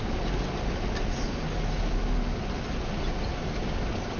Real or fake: real